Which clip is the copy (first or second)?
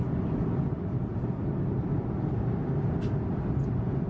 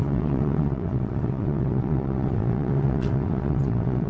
second